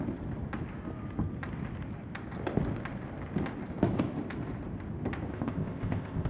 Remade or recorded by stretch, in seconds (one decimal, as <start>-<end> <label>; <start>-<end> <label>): 0.0-5.3 recorded; 5.3-6.3 remade